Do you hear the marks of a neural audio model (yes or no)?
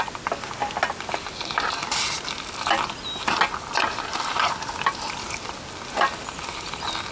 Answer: no